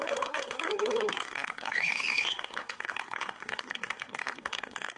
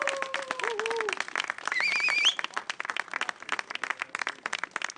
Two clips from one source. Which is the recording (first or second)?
second